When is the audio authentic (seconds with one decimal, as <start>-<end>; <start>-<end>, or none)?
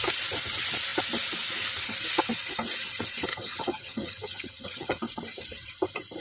0.0-3.3; 5.0-6.2